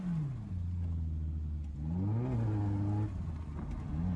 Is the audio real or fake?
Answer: real